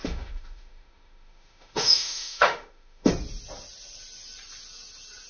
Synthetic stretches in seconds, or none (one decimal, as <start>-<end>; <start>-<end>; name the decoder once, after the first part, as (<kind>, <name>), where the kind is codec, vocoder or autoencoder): 0.0-3.1 (autoencoder, DAC-VAE)